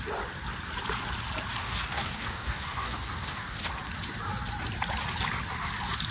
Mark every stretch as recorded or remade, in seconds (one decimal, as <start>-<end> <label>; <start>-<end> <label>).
0.0-1.6 recorded; 1.6-3.7 remade; 3.7-6.1 recorded